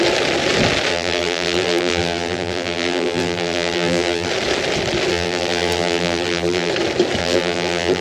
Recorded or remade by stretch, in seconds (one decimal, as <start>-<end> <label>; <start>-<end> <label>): 0.0-0.9 recorded; 0.9-4.3 remade; 4.3-5.1 recorded; 5.1-6.7 remade; 6.7-7.2 recorded; 7.2-8.0 remade